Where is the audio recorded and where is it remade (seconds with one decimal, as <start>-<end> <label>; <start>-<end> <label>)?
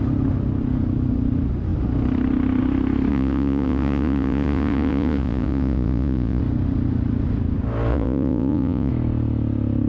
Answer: 0.0-3.1 recorded; 3.1-6.4 remade; 6.4-7.9 recorded; 7.9-8.9 remade; 8.9-9.9 recorded